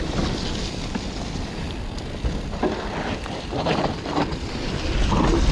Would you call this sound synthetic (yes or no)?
no